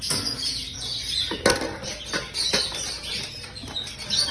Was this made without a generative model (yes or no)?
yes